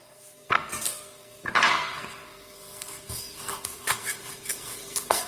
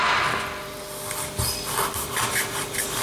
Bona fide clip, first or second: second